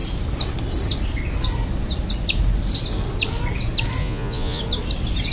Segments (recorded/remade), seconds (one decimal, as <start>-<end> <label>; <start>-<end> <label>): 0.0-4.0 recorded; 4.0-4.6 remade; 4.6-5.3 recorded